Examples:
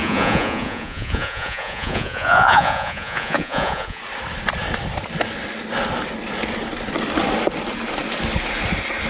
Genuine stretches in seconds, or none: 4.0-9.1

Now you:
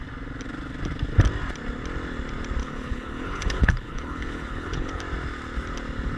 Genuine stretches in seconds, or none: 0.0-2.6; 5.0-6.2

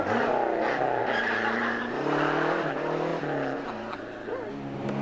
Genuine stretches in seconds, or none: 0.0-1.0; 2.7-5.0